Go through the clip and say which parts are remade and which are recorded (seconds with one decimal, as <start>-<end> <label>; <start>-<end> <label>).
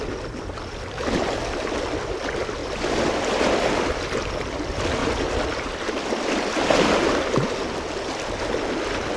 0.0-2.6 recorded; 2.6-4.3 remade; 4.3-9.2 recorded